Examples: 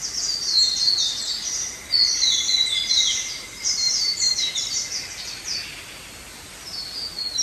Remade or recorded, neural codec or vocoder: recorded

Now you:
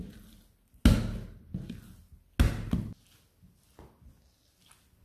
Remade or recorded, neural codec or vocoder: recorded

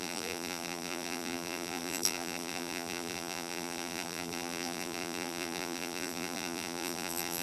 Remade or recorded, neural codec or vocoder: remade, vocoder, BigVGAN v2